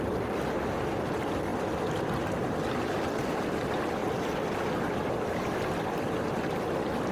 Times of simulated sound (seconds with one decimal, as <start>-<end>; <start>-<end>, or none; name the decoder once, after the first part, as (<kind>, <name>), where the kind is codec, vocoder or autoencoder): none